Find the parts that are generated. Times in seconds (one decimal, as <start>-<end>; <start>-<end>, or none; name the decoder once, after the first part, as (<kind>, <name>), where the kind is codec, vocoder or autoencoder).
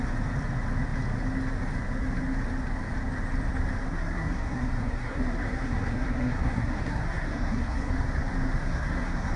3.9-7.9 (codec, SNAC); 8.6-9.4